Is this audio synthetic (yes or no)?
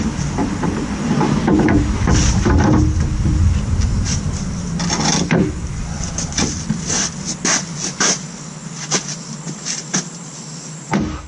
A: no